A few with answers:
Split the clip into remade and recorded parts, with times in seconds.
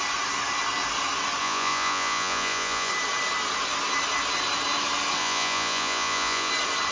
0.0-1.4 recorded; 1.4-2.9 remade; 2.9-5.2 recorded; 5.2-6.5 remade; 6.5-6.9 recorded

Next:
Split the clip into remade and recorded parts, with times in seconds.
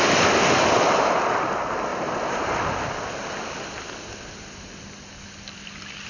0.0-1.9 recorded; 1.9-2.5 remade; 2.5-6.1 recorded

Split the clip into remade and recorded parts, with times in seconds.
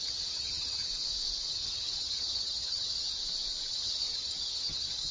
0.0-0.9 remade; 0.9-1.5 recorded; 1.5-3.2 remade; 3.2-3.7 recorded; 3.7-5.1 remade